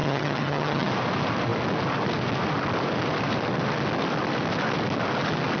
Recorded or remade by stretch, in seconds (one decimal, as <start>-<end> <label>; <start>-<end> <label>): 0.0-0.9 remade; 0.9-5.6 recorded